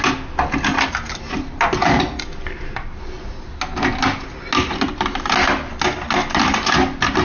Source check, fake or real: real